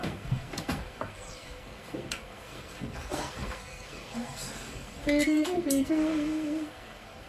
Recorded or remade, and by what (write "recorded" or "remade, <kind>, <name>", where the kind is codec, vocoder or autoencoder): remade, codec, SNAC